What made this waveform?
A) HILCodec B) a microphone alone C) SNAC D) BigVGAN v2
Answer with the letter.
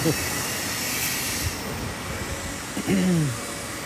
B